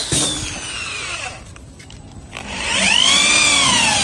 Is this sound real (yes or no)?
no